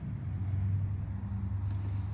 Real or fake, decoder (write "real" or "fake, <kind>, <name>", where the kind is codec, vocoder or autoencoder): real